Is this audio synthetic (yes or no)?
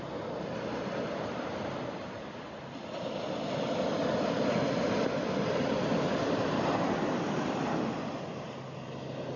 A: no